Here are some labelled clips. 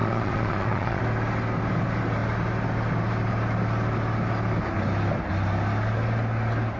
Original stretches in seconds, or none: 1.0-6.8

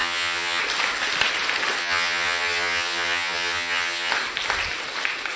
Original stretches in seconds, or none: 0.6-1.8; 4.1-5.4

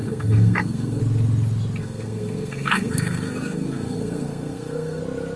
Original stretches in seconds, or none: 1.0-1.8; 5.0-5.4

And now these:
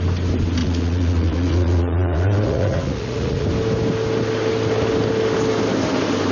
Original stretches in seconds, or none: 0.0-0.6; 3.5-6.3